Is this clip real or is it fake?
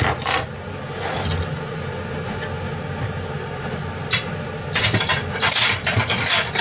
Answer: real